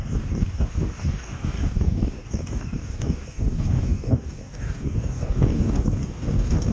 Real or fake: fake